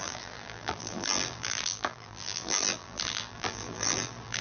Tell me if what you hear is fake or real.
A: fake